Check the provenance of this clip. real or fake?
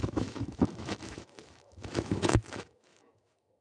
fake